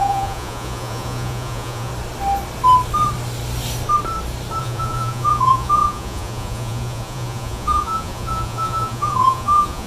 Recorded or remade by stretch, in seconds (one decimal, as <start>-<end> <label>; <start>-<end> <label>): 0.0-1.9 remade; 1.9-4.6 recorded; 4.6-9.9 remade